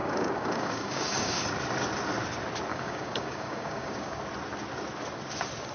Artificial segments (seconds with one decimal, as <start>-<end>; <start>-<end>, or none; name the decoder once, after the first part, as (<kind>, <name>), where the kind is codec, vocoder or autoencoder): 0.0-1.4 (codec, DAC); 2.7-4.2